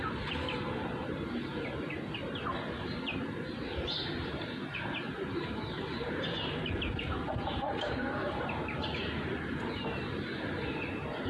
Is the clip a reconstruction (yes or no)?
yes